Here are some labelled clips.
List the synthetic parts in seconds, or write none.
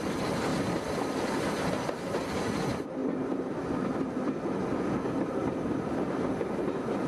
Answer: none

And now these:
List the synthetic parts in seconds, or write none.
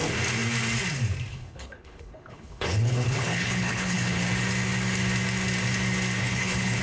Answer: 1.3-4.2; 6.2-6.8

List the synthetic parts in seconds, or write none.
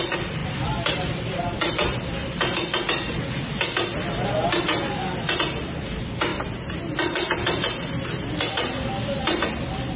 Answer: none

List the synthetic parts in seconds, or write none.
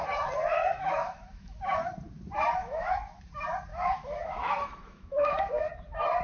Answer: 0.6-1.6; 2.6-3.2; 3.7-5.5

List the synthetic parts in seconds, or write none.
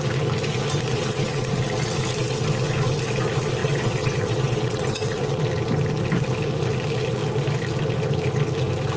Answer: 0.9-1.5; 3.6-5.4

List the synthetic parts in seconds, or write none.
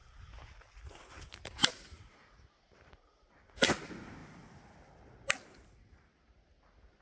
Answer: 0.0-1.7; 4.2-5.1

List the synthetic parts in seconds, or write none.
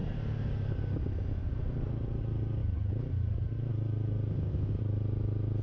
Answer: 4.3-4.8